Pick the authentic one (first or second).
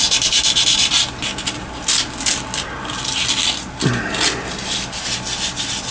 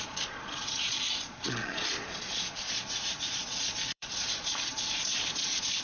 first